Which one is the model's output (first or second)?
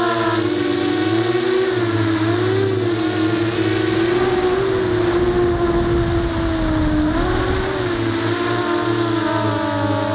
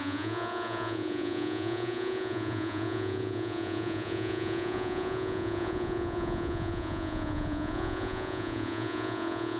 second